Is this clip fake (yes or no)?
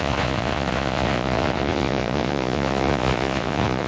yes